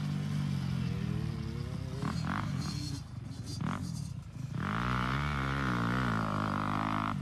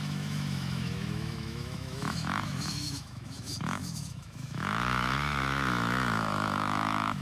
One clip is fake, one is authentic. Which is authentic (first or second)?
first